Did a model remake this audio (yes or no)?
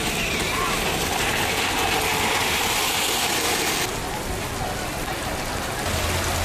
no